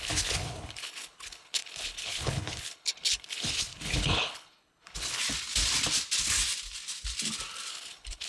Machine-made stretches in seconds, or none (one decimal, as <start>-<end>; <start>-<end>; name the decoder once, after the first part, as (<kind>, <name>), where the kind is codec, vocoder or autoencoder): 0.0-5.2 (codec, HILCodec); 7.7-8.3